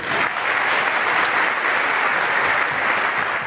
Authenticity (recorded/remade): recorded